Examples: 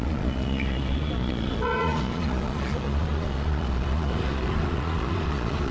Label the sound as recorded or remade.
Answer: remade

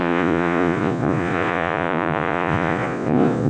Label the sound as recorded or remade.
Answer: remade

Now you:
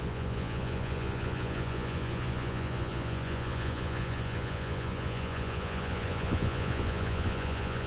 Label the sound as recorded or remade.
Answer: remade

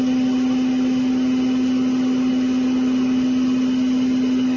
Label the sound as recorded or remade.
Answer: recorded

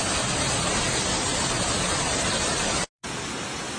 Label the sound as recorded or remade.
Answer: recorded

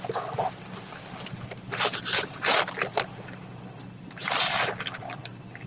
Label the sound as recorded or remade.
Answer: recorded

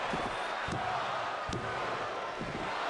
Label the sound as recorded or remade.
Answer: recorded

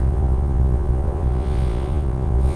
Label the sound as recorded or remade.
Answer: remade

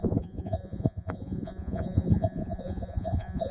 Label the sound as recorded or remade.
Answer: remade